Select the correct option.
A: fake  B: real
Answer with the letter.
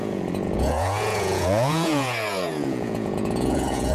A